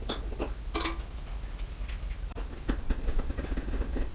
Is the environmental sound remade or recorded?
recorded